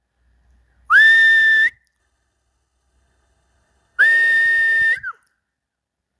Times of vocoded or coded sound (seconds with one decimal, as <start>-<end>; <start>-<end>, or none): 2.0-4.0

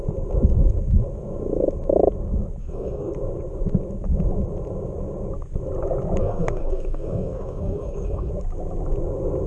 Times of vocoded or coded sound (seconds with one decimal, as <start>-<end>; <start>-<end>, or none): 2.6-3.1; 6.2-8.3

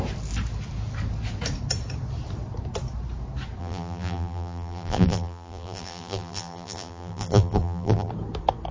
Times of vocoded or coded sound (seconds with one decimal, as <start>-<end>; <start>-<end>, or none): 3.6-8.1

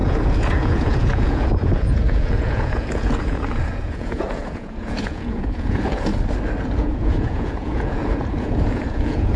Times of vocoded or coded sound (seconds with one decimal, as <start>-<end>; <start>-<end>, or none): 0.0-6.1; 6.6-9.4

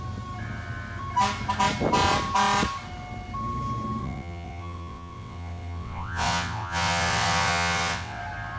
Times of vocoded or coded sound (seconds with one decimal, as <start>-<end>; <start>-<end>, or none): 4.0-8.2

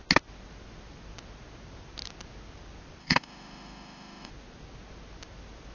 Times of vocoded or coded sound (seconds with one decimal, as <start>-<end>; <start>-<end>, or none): 3.0-4.3